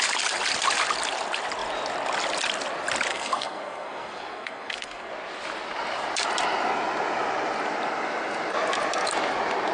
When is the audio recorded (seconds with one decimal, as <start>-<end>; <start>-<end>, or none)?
0.0-3.1; 5.1-9.7

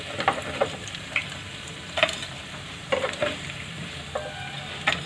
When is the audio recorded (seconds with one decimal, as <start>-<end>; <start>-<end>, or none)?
0.0-0.6; 3.7-5.1

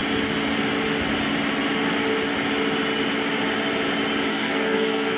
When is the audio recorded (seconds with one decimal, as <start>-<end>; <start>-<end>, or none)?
0.0-4.3

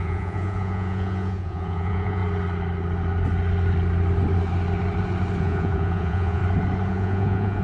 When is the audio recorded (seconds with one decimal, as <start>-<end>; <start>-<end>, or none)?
2.2-5.4; 6.4-6.9

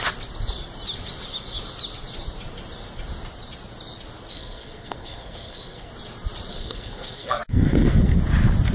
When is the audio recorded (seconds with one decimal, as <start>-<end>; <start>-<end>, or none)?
0.0-4.3; 5.9-6.5; 8.2-8.7

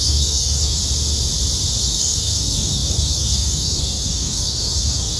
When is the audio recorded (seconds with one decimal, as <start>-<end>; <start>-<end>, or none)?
0.8-1.8